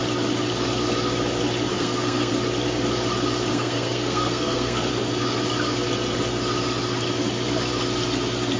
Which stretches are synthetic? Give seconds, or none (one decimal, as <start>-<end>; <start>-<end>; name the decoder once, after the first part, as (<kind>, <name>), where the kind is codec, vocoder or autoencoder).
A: 1.7-2.3 (codec, SNAC); 3.5-4.9